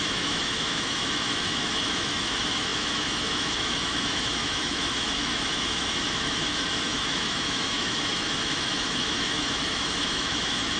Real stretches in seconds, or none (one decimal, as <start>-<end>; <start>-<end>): none